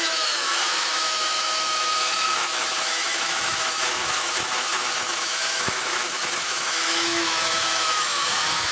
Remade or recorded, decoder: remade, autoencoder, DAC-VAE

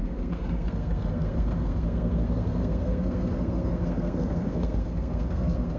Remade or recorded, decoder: remade, codec, SNAC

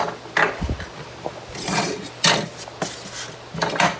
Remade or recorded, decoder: recorded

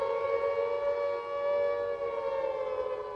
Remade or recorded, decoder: recorded